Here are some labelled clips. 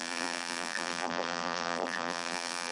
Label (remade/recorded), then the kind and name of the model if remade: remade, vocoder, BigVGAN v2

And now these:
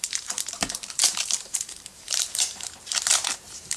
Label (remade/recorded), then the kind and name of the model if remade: remade, vocoder, BigVGAN v2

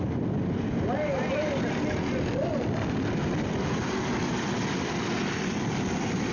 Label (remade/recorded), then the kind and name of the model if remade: recorded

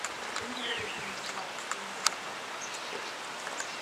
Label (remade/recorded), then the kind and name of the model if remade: recorded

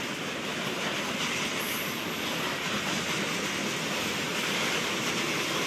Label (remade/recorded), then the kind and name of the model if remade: recorded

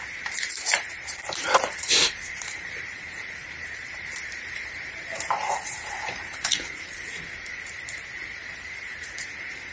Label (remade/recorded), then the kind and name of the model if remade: remade, vocoder, BigVGAN v2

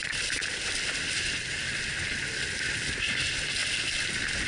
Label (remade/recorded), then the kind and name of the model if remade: recorded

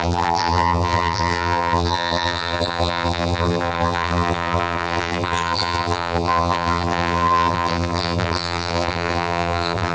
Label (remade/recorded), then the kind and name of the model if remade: remade, vocoder, BigVGAN v2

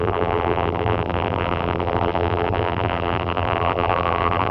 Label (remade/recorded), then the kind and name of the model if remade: remade, vocoder, BigVGAN v2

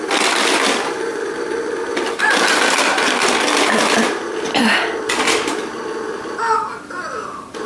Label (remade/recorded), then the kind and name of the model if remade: remade, vocoder, BigVGAN v2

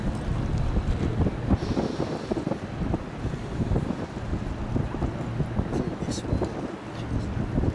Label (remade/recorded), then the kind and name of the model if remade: recorded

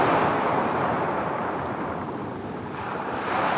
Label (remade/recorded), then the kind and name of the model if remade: recorded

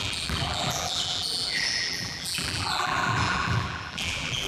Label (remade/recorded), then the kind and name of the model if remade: remade, vocoder, BigVGAN v2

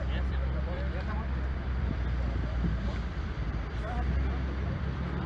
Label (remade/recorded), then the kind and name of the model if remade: remade, vocoder, BigVGAN v2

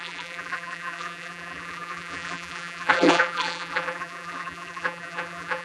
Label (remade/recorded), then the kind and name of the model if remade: remade, vocoder, BigVGAN v2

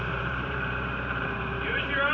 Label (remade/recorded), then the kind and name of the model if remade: remade, vocoder, BigVGAN v2